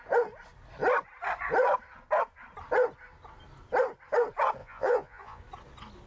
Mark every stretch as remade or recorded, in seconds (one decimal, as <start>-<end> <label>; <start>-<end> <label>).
0.0-4.6 recorded; 4.6-5.4 remade; 5.4-6.1 recorded